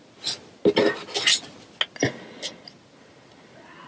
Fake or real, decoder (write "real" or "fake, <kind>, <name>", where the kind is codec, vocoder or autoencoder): real